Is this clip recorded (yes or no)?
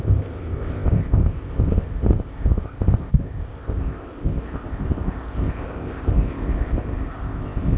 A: no